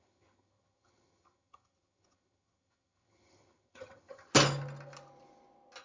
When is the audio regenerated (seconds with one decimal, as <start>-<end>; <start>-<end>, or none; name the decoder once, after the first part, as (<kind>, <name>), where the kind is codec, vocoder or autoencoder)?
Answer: 0.0-4.3 (vocoder, HiFi-GAN)